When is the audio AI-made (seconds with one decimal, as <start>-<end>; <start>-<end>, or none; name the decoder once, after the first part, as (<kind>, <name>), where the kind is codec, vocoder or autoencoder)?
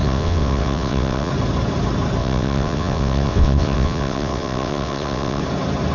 0.0-1.3 (vocoder, WaveNeXt); 2.2-5.4